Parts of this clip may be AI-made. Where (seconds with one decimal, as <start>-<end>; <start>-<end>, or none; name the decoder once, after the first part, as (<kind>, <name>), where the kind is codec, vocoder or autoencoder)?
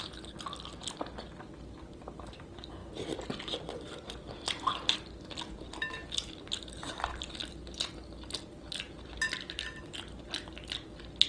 none